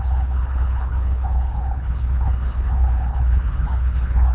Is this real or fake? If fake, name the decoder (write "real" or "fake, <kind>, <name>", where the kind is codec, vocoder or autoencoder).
fake, codec, HILCodec